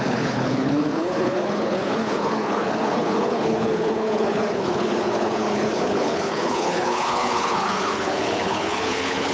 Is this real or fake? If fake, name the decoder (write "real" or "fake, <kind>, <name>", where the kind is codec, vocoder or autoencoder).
fake, codec, HILCodec